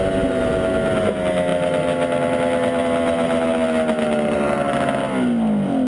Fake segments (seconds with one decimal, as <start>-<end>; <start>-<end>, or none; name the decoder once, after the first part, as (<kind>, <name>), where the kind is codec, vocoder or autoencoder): none